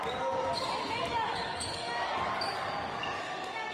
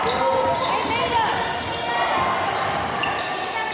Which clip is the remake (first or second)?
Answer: first